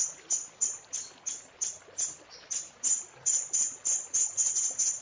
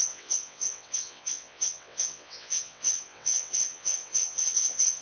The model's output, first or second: second